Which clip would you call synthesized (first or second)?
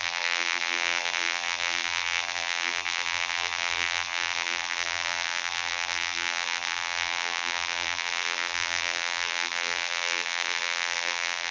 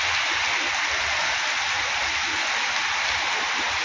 first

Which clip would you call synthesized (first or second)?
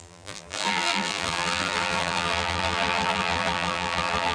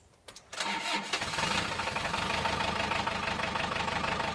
first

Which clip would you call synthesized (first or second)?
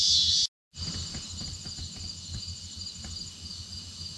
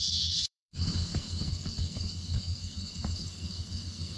second